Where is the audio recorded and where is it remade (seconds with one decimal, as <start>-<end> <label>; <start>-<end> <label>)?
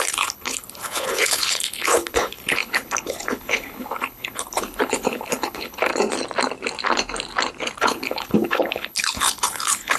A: 0.0-5.9 remade; 5.9-7.8 recorded; 7.8-10.0 remade